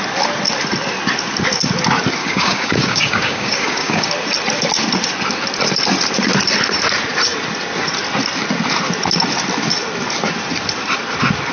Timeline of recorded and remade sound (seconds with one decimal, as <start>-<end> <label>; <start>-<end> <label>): 0.0-2.2 recorded; 2.2-4.1 remade; 4.1-11.5 recorded